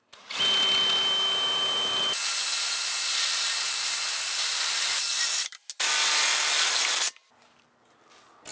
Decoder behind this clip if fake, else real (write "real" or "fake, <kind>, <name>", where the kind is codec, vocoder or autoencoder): real